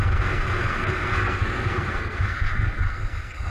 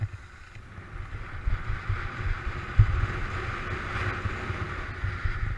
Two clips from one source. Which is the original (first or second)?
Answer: second